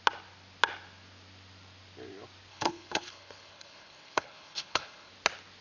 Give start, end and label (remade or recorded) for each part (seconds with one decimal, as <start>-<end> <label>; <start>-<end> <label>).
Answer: 0.0-2.5 recorded; 2.5-5.1 remade; 5.1-5.6 recorded